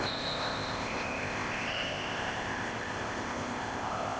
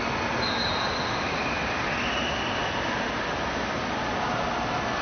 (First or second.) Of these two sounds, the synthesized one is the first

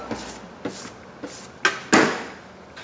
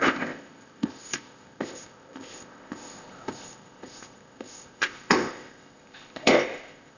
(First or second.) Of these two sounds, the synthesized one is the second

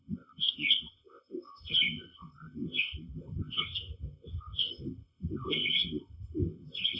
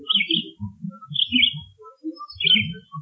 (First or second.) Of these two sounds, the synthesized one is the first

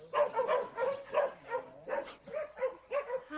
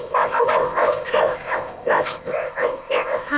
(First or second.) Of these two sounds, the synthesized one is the second